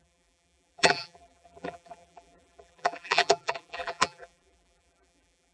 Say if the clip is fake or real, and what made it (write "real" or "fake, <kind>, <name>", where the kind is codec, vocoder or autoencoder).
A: fake, vocoder, BigVGAN v2